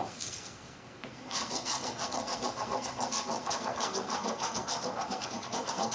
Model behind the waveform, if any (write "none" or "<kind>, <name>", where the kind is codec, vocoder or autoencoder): codec, SNAC